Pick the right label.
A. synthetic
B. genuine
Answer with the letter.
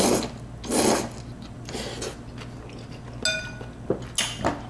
B